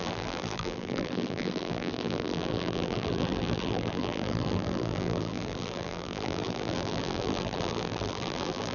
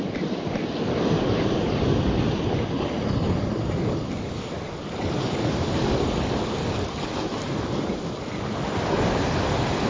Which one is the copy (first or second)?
first